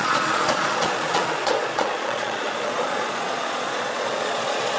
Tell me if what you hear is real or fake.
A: fake